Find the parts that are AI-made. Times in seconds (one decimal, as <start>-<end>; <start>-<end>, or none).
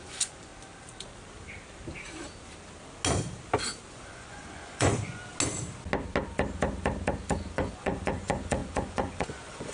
0.0-0.5; 3.9-5.2; 7.5-9.7